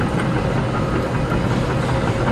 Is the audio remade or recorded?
recorded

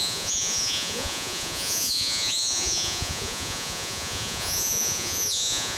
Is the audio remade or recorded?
remade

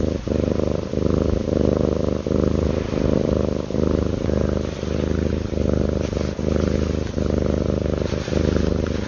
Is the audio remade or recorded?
recorded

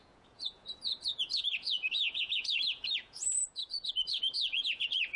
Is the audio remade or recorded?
remade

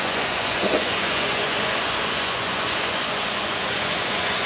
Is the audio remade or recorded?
remade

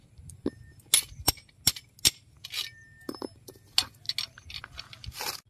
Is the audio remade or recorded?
recorded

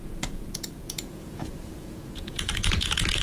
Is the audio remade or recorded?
remade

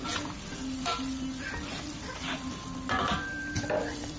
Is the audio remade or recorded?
recorded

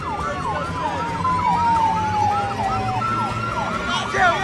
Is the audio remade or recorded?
recorded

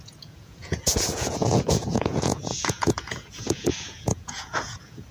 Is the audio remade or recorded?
remade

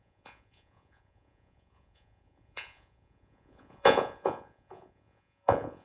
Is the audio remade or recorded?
remade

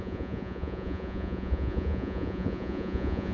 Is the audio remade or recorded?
remade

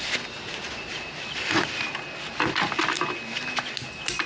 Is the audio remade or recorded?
recorded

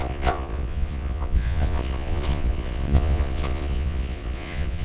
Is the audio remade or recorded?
remade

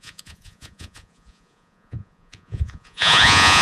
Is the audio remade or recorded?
remade